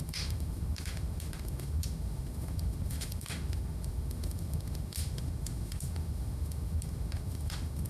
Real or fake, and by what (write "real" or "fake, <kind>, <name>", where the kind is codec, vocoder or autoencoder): fake, autoencoder, DAC-VAE